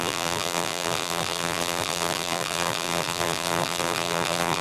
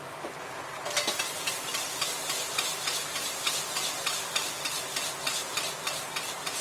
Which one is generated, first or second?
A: first